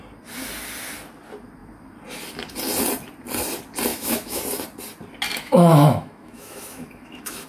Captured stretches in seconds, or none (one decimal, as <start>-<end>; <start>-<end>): 0.0-3.9; 4.4-5.3